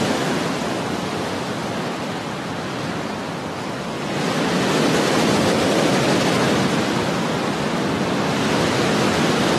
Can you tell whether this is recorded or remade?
recorded